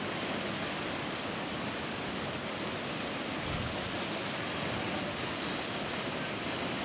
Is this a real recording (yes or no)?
yes